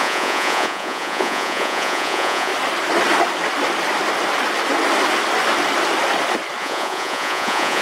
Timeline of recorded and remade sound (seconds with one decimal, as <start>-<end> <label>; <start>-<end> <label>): 0.0-2.5 remade; 2.5-6.6 recorded; 6.6-7.8 remade